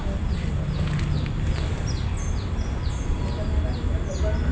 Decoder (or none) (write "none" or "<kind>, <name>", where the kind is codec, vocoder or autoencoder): none